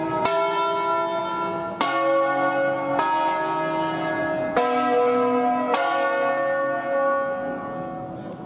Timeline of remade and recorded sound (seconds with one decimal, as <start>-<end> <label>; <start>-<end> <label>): 0.0-8.5 recorded